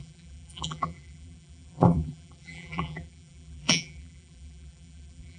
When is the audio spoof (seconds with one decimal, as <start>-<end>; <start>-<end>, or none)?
0.0-5.4